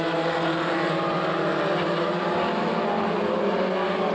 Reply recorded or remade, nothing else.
recorded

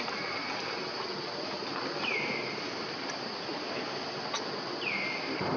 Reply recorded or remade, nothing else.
recorded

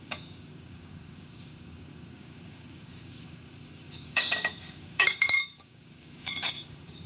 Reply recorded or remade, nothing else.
remade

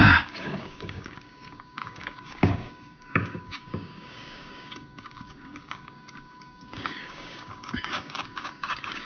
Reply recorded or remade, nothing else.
remade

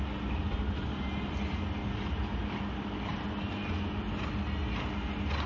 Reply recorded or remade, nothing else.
recorded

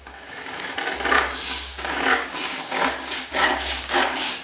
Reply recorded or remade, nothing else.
remade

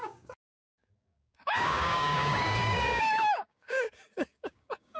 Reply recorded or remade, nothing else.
remade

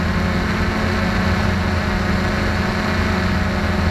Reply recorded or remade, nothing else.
recorded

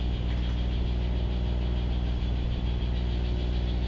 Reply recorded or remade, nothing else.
recorded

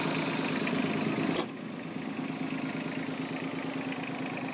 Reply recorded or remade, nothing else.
recorded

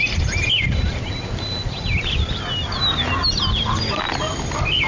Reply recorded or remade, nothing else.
recorded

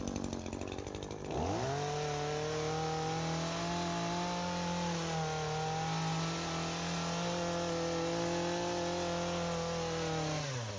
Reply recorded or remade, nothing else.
recorded